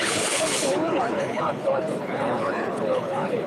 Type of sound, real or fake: fake